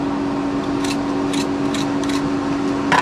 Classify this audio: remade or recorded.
recorded